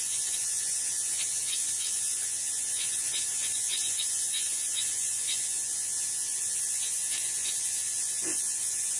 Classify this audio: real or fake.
fake